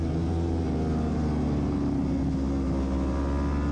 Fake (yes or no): no